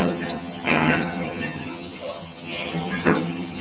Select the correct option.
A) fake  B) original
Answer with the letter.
A